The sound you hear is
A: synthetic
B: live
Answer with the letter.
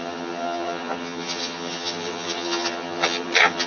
A